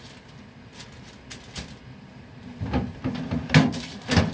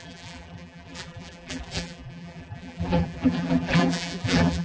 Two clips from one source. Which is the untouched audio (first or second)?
first